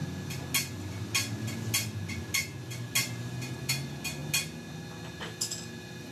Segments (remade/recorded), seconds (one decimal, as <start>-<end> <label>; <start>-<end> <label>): 0.0-6.1 recorded